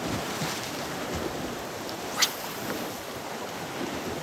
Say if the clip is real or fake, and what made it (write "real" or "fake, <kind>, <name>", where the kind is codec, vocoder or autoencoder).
real